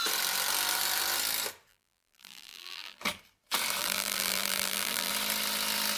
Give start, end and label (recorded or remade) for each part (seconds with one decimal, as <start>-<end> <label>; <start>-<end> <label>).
0.0-1.7 recorded; 1.7-3.0 remade; 3.0-3.8 recorded; 3.8-5.1 remade; 5.1-6.0 recorded